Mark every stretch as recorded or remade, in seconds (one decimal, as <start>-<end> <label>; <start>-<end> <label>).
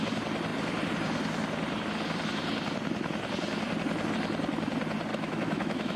0.0-5.1 recorded; 5.1-6.0 remade